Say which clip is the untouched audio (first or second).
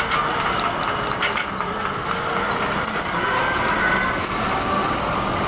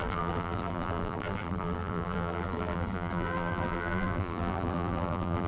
first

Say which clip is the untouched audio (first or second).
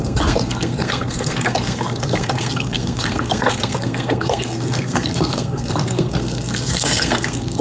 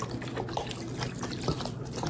second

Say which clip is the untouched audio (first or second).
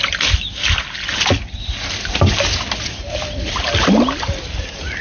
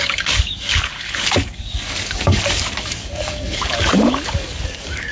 first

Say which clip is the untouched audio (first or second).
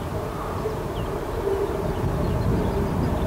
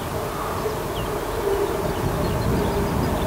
second